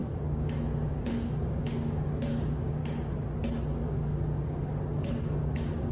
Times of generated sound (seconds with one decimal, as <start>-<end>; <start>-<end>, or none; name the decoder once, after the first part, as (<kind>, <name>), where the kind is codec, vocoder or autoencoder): 0.0-2.8 (codec, DAC); 3.7-5.9